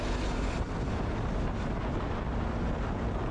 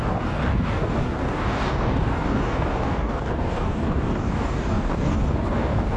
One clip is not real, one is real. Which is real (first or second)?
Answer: first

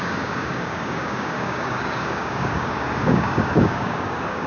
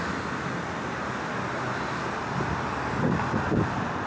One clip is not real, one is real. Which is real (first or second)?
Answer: second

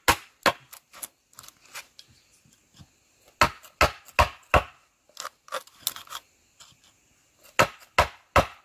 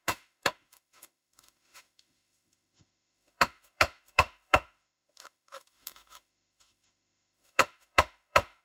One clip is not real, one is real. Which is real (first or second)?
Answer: first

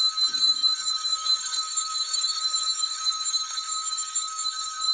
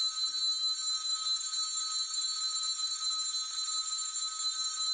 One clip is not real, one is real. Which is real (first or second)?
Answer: second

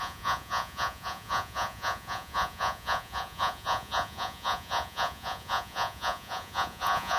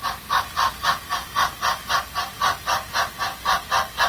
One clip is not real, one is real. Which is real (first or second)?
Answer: second